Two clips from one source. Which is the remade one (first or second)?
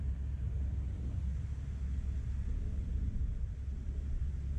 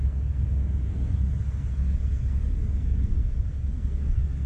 second